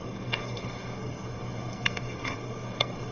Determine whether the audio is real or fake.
fake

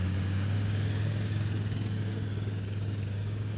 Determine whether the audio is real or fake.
fake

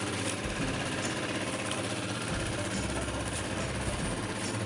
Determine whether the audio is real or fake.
fake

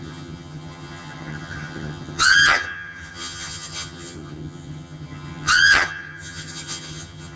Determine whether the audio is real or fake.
fake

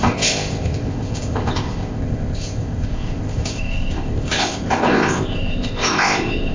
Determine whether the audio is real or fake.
fake